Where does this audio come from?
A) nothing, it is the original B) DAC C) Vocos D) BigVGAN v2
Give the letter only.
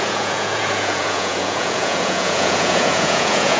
C